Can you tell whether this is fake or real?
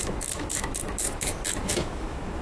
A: fake